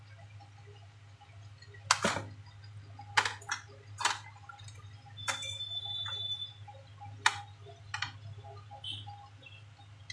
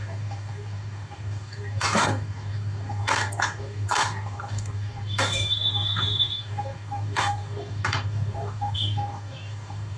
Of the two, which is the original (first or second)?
first